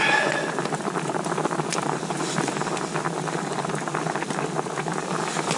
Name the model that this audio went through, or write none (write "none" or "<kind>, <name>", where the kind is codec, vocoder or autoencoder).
none